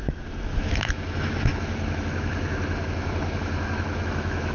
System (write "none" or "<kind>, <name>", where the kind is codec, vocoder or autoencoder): autoencoder, DAC-VAE